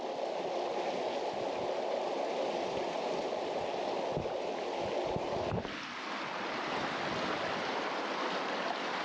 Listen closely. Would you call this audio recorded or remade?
recorded